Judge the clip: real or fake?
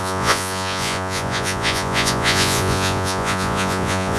fake